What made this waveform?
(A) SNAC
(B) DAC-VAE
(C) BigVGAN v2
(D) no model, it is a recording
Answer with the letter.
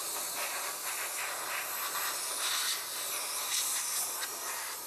D